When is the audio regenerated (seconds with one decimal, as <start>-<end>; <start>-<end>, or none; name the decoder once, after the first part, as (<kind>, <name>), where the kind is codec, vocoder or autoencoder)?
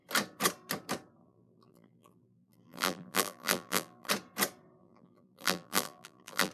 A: 1.2-4.1 (vocoder, BigVGAN v2); 4.8-6.5